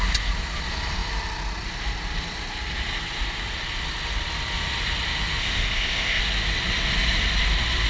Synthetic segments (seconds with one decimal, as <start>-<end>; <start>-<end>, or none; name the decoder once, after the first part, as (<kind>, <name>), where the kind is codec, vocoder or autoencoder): 5.4-6.2 (codec, ZipCodec)